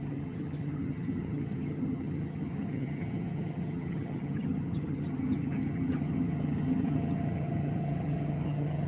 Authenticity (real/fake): fake